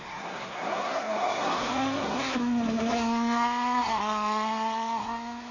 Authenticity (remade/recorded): remade